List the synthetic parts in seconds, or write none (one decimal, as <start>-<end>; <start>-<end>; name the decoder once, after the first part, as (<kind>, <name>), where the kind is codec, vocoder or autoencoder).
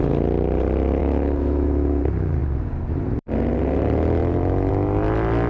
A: 1.0-2.0 (autoencoder, DAC-VAE)